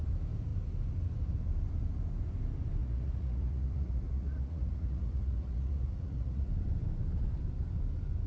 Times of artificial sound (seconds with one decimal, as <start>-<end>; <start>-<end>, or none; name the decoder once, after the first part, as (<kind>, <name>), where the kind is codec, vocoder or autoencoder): 2.8-6.5 (vocoder, Vocos)